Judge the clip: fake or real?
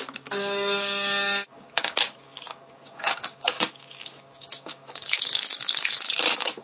fake